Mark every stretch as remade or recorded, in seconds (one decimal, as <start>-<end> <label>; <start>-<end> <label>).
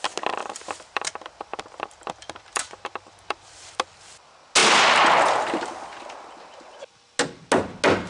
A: 0.0-0.4 recorded; 0.4-1.1 remade; 1.1-1.5 recorded; 1.5-3.6 remade; 3.6-4.6 recorded; 4.6-5.2 remade; 5.2-8.1 recorded